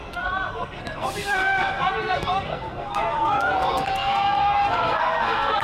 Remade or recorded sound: remade